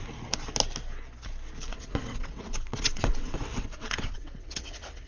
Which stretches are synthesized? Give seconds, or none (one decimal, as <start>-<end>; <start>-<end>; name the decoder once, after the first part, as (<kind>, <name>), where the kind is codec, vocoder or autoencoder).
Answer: 1.7-5.1 (vocoder, WaveNeXt)